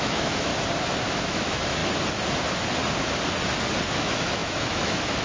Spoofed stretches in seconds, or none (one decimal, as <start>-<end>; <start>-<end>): 0.0-0.5; 1.1-1.8; 3.9-5.2